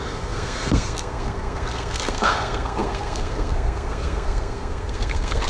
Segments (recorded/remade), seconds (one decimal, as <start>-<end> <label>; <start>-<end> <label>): 0.0-5.5 remade